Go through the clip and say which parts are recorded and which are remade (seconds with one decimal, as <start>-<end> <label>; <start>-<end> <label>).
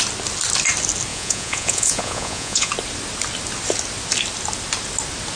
0.0-1.1 recorded; 1.1-2.7 remade; 2.7-5.4 recorded